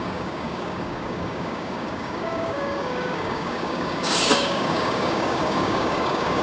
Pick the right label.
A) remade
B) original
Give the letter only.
A